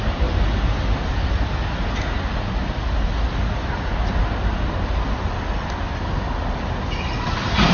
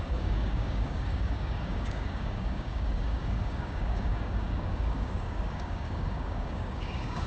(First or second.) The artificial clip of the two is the second